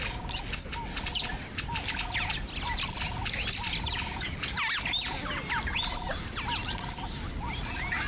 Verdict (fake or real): real